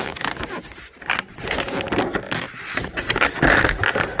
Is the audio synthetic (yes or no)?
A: no